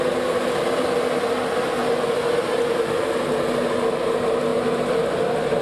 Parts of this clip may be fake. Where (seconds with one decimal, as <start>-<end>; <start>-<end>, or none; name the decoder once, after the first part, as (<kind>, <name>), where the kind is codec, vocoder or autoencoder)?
none